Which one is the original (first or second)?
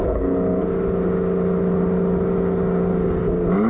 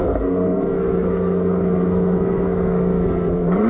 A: first